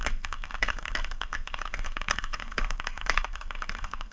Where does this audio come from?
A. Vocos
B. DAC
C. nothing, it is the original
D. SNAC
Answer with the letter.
D